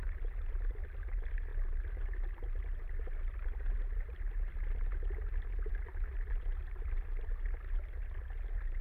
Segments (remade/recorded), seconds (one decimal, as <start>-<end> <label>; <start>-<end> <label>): 0.0-8.8 recorded